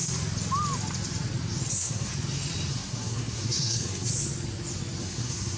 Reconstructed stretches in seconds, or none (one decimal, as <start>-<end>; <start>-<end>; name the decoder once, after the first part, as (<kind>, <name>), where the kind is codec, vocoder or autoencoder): 1.7-2.1 (codec, SNAC); 2.7-4.1; 5.0-5.6